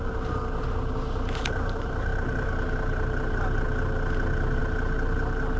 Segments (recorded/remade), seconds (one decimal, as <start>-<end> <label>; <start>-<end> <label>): 0.0-5.6 recorded